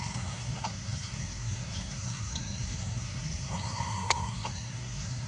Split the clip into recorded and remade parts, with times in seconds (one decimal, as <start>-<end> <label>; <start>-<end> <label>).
0.0-5.3 remade